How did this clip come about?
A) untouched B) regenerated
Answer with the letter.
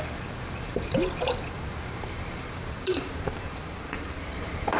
B